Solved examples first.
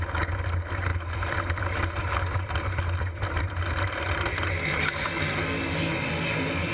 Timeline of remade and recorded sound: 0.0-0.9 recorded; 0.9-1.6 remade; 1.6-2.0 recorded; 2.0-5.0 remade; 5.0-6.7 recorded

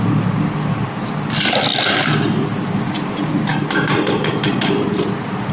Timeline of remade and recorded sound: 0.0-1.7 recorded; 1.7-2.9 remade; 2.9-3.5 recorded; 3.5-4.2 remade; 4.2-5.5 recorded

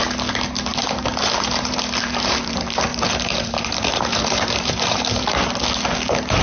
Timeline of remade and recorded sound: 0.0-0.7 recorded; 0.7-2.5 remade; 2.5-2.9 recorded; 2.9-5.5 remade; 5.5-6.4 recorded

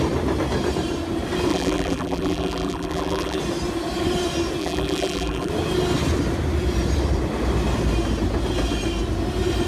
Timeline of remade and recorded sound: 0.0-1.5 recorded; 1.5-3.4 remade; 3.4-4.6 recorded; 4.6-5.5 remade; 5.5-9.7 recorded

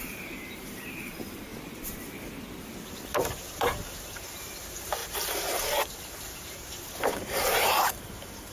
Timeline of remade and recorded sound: 0.0-1.5 remade; 1.5-3.6 recorded; 3.6-8.5 remade

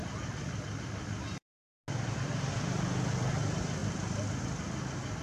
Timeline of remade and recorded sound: 0.0-5.2 recorded